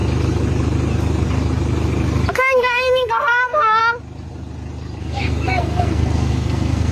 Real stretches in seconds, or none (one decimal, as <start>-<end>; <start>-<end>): 0.0-2.3; 3.8-5.0